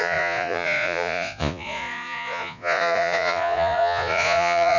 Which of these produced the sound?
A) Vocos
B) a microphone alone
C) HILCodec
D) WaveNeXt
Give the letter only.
A